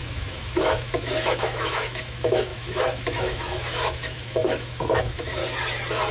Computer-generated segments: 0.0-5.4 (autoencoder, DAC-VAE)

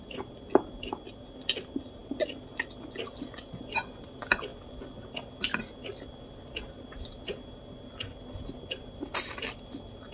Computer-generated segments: none

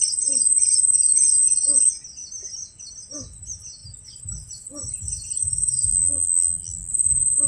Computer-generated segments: 5.9-6.9 (vocoder, BigVGAN v2)